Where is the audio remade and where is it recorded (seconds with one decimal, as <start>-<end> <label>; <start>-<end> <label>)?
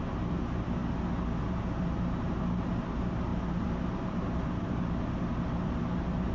0.0-6.3 recorded